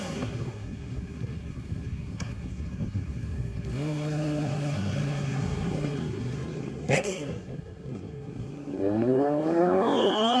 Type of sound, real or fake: fake